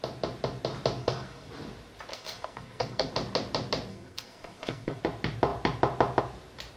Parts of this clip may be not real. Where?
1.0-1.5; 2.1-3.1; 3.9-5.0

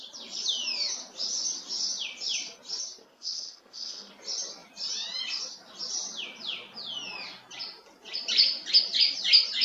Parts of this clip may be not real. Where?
3.0-4.1

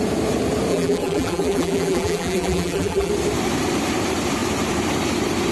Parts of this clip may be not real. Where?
0.7-3.1

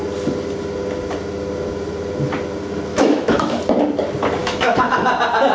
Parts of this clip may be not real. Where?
2.9-3.6; 4.4-5.1

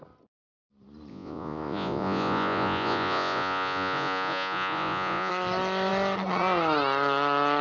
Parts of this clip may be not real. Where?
1.1-5.3

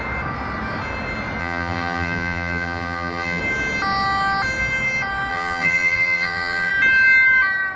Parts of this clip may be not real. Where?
1.4-3.4; 5.3-6.7

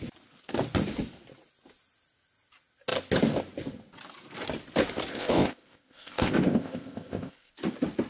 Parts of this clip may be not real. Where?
5.1-7.5